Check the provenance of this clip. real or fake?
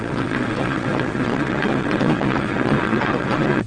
fake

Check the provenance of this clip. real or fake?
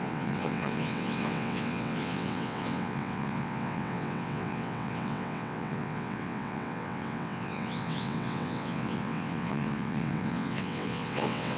fake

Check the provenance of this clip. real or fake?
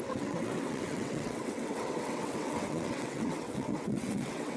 fake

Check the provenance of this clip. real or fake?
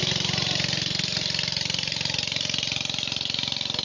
real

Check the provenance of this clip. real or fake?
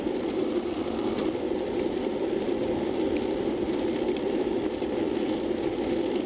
real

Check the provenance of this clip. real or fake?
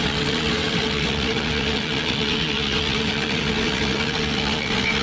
fake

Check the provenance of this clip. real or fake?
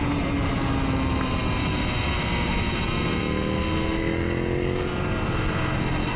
real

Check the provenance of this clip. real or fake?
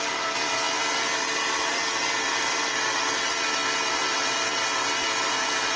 real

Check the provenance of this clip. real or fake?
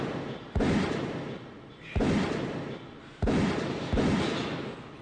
real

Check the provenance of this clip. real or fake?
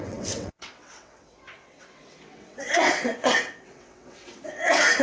fake